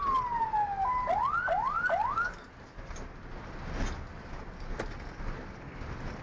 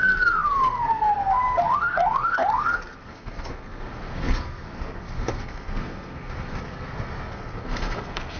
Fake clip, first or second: second